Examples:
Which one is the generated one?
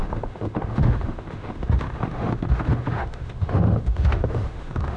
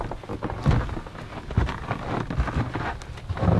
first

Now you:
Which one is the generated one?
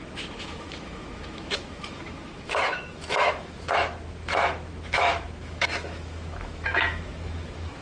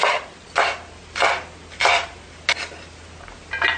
first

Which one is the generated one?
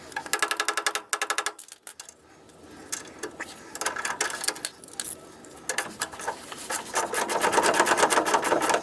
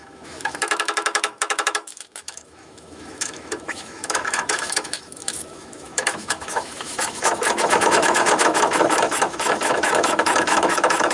second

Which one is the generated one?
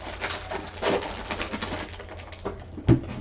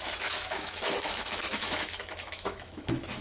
second